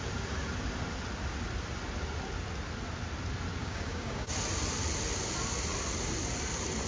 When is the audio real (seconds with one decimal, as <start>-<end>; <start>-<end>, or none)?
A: 0.0-3.6; 4.3-6.9